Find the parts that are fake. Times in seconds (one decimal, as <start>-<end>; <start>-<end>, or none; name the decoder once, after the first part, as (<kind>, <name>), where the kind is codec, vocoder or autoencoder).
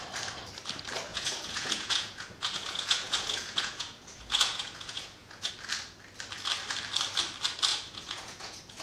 1.1-5.5 (vocoder, Vocos); 7.7-8.8